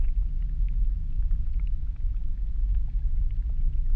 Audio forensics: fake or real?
real